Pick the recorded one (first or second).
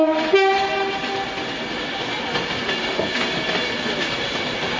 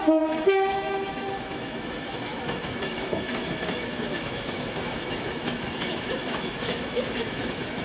first